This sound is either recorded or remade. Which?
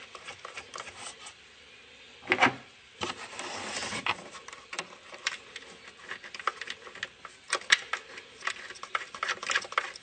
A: recorded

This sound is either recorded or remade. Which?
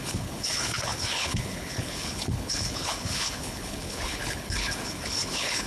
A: remade